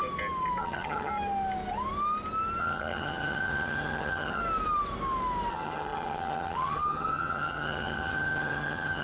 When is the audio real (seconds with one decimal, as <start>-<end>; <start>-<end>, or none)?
0.0-0.6; 1.1-2.6; 4.4-5.5